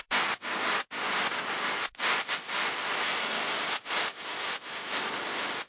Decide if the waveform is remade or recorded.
remade